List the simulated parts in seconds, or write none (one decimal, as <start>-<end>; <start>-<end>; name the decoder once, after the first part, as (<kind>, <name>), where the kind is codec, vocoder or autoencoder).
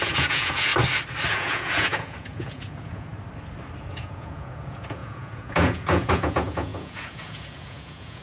0.0-0.7 (vocoder, Vocos); 1.3-3.1; 3.8-8.2